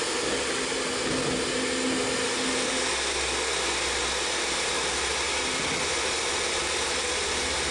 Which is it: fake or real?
real